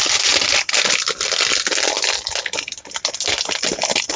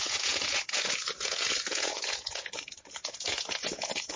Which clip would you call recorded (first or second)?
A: first